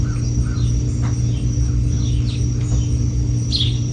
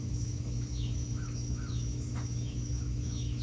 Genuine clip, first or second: first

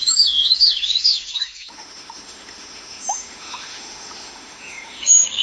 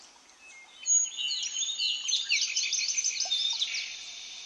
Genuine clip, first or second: second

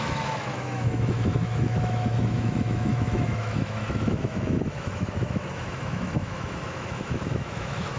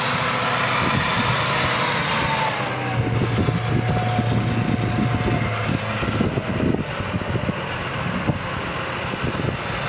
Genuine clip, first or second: second